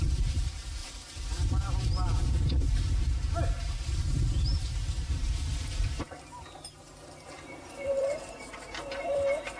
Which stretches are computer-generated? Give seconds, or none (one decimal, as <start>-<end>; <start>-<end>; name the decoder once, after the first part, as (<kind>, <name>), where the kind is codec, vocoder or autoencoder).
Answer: 0.0-9.6 (vocoder, BigVGAN v2)